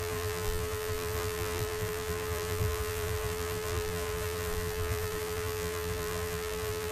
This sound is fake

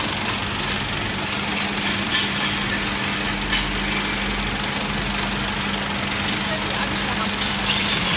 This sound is real